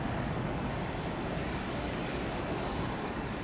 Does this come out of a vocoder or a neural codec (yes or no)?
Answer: yes